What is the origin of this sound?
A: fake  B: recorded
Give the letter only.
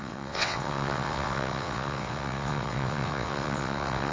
A